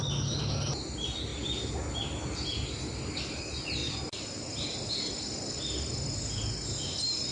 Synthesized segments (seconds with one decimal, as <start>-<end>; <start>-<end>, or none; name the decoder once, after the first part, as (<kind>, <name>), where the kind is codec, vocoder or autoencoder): none